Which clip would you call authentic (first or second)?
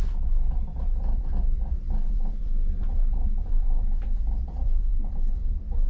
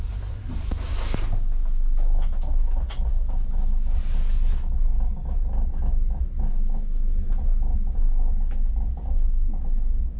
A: second